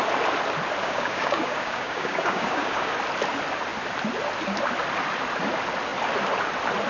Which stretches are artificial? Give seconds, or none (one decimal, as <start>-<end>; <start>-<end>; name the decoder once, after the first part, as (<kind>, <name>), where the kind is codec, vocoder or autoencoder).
0.8-2.9 (codec, DAC)